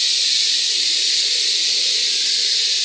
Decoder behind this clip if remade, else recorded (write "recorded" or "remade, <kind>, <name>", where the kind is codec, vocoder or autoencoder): recorded